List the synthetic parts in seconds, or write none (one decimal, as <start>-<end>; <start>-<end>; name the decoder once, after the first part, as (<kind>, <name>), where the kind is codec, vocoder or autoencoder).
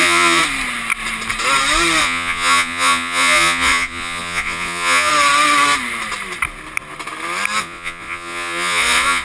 0.0-0.4 (vocoder, Vocos); 2.0-5.1; 7.6-9.2